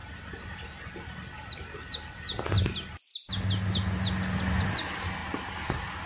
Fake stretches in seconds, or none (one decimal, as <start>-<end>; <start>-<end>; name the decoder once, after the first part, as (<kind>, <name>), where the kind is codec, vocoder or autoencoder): none